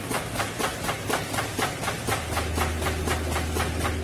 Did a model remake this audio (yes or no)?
no